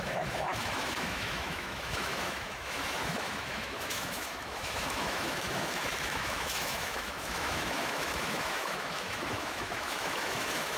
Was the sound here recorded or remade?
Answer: remade